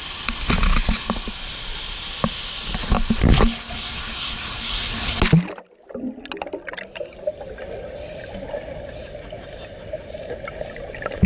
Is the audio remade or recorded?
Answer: recorded